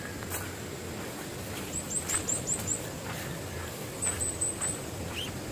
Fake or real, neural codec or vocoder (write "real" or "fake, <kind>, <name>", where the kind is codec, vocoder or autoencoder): fake, vocoder, BigVGAN v2